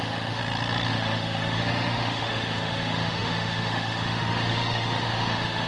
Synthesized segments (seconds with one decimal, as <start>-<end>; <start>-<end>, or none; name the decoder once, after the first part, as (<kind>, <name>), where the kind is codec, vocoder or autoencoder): 0.0-0.4 (autoencoder, DAC-VAE); 0.9-5.7